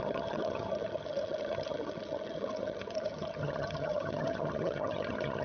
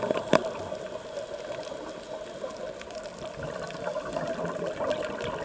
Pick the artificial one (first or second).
first